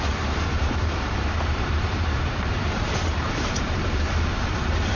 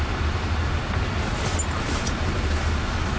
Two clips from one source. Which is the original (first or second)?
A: second